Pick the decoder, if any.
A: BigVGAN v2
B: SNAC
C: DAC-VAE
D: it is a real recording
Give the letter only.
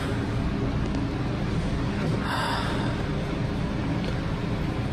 D